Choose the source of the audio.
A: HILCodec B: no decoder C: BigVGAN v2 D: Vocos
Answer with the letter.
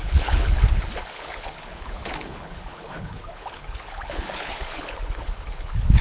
A